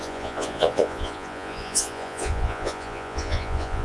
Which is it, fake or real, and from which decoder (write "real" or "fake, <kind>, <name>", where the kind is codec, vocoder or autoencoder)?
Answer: fake, vocoder, Vocos